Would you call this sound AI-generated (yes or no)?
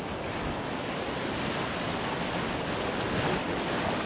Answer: no